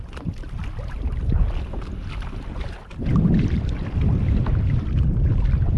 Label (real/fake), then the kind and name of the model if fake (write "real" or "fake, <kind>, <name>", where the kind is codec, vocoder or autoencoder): real